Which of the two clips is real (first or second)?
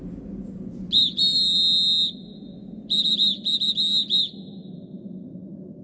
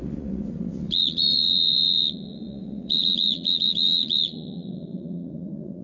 first